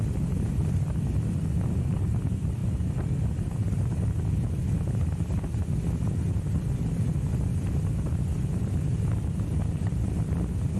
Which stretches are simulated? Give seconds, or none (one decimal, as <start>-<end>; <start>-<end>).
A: none